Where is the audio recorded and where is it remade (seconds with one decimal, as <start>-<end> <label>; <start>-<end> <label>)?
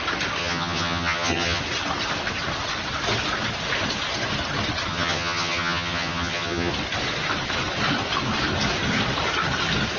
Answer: 0.0-0.4 recorded; 0.4-1.6 remade; 1.6-4.9 recorded; 4.9-6.7 remade; 6.7-10.0 recorded